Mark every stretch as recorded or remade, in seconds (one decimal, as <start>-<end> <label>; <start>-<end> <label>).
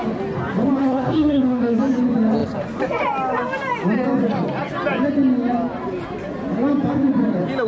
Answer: 0.0-0.8 recorded; 0.8-1.8 remade; 1.8-7.7 recorded